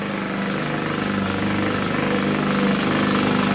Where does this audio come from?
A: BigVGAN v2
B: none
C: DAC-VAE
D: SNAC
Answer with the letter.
B